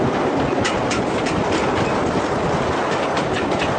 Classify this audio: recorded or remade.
recorded